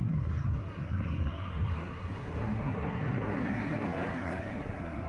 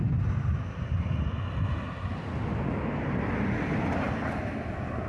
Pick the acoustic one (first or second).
second